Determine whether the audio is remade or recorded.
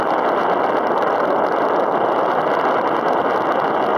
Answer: recorded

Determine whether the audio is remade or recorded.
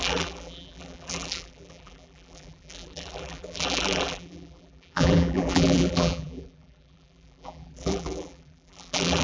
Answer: remade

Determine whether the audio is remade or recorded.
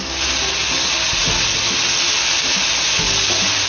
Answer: recorded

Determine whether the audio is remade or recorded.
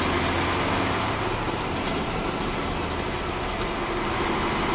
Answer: recorded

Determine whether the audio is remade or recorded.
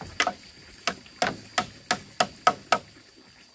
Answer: recorded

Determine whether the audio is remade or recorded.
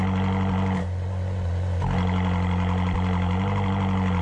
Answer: recorded